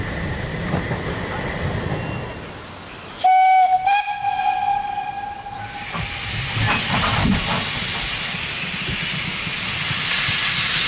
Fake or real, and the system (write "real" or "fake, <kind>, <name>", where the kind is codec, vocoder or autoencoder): real